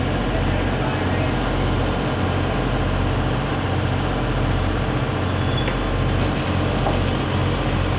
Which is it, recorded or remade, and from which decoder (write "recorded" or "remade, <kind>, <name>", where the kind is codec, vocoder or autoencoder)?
recorded